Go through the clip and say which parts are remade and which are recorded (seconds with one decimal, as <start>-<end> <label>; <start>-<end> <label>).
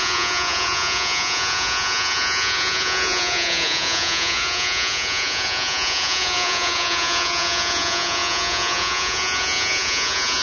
0.0-10.4 remade